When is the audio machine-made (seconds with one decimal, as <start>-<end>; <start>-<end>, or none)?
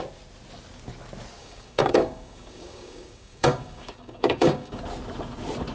1.4-4.8